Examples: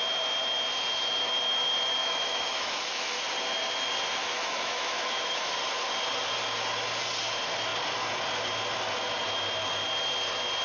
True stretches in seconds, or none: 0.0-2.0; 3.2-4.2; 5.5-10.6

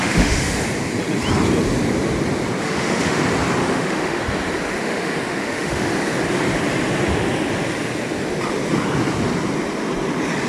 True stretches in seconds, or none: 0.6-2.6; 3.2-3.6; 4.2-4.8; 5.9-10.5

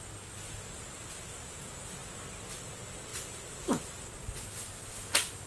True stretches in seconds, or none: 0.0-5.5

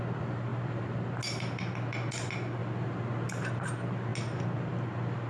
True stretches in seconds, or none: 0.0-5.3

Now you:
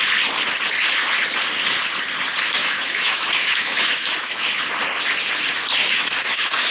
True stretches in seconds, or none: 0.0-2.6; 4.6-5.8

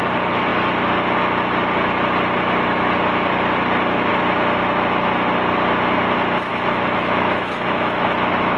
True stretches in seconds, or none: 0.0-6.5

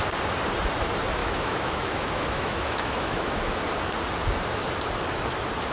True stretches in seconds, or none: 0.0-1.2; 3.5-5.7